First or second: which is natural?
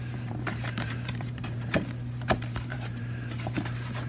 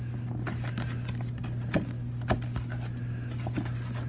second